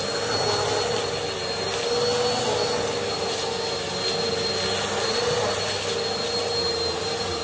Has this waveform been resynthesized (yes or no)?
no